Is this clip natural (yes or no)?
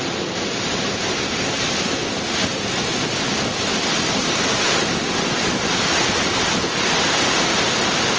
yes